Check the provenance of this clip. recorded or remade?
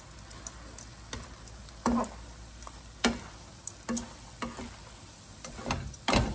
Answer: recorded